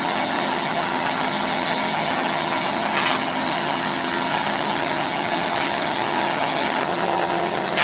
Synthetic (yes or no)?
yes